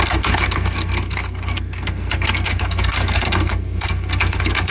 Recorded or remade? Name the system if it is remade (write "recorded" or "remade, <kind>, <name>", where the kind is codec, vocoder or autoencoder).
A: remade, codec, SNAC